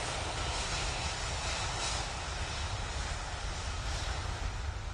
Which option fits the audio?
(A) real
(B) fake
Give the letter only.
A